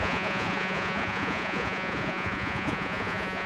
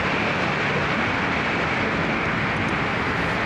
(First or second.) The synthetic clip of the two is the first